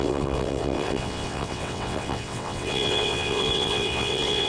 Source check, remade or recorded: remade